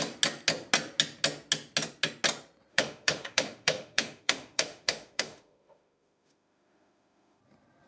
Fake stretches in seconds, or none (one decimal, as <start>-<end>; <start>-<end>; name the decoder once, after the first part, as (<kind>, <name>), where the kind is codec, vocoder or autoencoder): 2.7-7.4 (autoencoder, DAC-VAE)